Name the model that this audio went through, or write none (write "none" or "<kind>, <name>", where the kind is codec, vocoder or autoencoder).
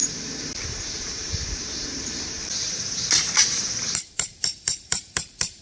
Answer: vocoder, BigVGAN v2